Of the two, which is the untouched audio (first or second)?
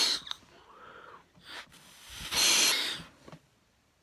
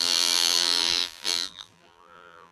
first